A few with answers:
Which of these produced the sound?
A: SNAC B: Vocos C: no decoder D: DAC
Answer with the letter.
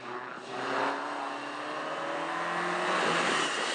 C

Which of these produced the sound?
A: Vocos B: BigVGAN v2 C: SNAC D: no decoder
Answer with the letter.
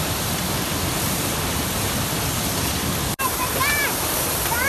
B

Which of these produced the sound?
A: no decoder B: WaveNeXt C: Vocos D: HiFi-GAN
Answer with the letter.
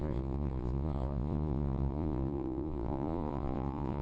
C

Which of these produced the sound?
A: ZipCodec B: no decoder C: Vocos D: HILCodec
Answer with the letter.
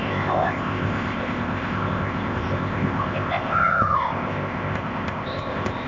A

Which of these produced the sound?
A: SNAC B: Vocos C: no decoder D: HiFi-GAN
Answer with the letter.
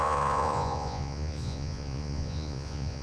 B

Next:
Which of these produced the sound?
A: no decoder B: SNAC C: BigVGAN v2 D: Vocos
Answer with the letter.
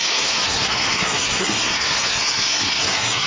B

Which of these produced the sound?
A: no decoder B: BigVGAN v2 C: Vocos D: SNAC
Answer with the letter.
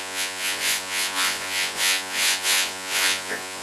C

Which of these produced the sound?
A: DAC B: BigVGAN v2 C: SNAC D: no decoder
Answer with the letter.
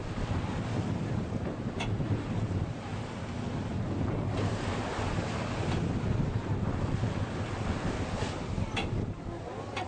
D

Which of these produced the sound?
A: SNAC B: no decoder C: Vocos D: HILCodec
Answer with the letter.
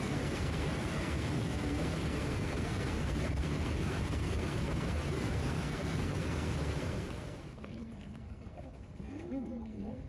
A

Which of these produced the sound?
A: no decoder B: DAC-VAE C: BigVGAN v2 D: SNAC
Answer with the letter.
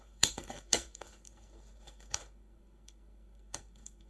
D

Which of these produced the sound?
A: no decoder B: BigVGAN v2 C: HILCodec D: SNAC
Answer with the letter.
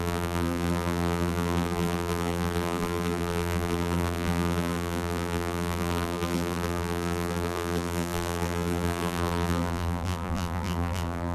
B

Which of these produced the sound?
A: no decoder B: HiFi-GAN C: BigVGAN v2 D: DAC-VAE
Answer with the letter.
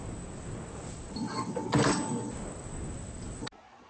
A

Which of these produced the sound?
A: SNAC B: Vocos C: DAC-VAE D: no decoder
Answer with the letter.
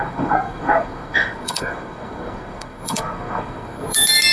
A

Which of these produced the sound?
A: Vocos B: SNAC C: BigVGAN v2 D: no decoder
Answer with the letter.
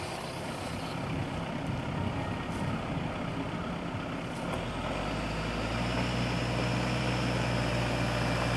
D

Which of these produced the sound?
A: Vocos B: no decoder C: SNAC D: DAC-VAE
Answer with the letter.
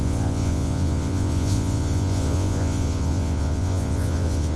A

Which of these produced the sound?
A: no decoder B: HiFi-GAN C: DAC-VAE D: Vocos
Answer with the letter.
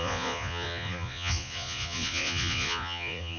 D